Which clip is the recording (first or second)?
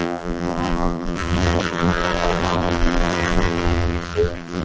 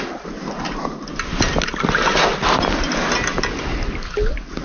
second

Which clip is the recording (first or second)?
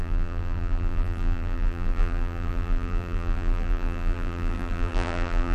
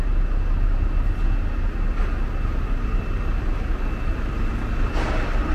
second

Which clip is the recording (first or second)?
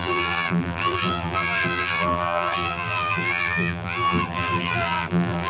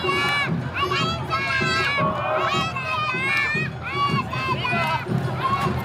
second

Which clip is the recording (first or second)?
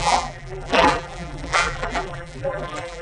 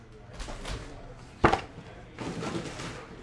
second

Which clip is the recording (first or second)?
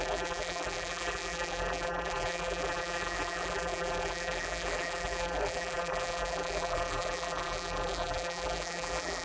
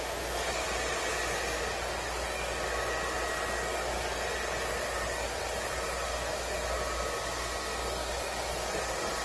second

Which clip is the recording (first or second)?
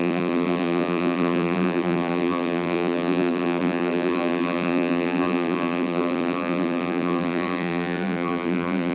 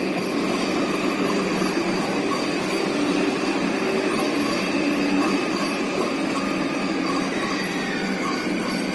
second